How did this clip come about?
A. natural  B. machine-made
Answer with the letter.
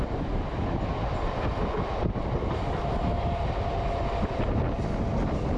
A